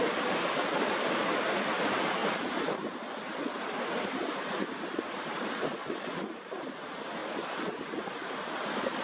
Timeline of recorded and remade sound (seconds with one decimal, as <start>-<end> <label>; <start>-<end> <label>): 0.0-5.7 recorded; 5.7-6.2 remade; 6.2-9.0 recorded